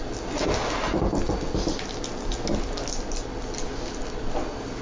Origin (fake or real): real